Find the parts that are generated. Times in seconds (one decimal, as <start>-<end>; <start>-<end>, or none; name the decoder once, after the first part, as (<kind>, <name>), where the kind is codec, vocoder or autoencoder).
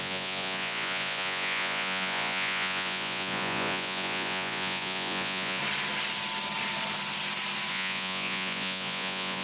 0.0-5.6 (vocoder, Vocos); 7.7-9.4